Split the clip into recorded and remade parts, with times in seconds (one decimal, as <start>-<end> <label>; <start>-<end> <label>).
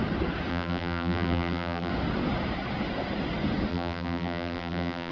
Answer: 0.0-0.5 recorded; 0.5-1.9 remade; 1.9-3.7 recorded; 3.7-5.1 remade